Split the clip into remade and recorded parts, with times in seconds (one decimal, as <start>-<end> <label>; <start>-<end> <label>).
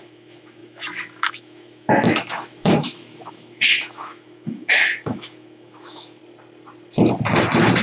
0.0-6.2 remade; 6.2-7.8 recorded